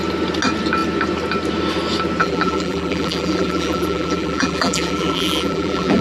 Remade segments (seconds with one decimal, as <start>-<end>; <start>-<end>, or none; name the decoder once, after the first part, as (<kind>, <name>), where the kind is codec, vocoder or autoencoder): 2.2-6.0 (vocoder, BigVGAN v2)